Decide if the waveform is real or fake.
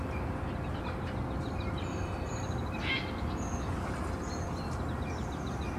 real